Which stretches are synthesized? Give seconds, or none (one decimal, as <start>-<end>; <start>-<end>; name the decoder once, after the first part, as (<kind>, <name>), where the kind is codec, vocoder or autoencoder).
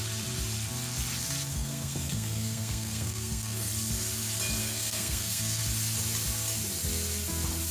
1.5-3.7 (codec, SNAC); 4.6-5.6